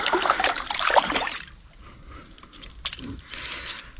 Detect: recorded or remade remade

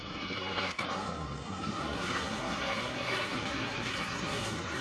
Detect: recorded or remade remade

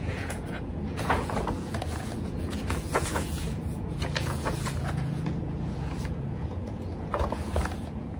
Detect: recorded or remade remade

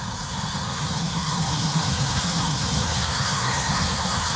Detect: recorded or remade remade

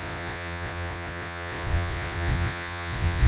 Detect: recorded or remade remade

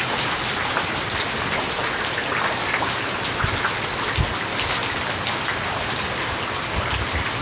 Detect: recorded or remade recorded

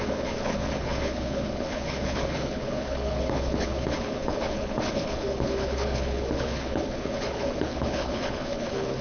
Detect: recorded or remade remade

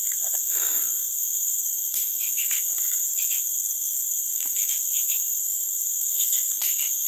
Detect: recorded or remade remade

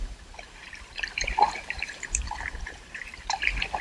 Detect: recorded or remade remade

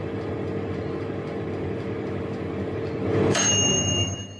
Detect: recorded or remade remade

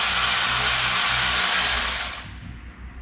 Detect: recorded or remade recorded